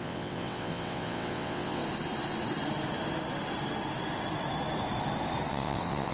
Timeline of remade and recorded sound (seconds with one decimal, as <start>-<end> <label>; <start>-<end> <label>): 0.0-1.8 remade; 1.8-5.5 recorded; 5.5-6.1 remade